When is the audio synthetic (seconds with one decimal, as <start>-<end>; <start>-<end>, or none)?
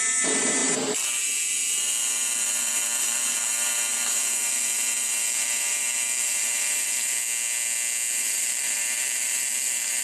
0.0-7.2; 8.1-10.0